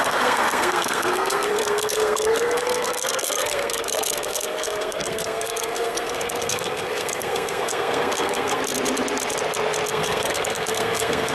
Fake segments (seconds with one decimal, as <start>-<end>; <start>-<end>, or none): 0.0-8.6; 9.9-11.3